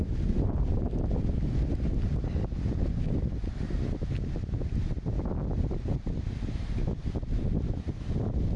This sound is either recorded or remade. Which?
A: recorded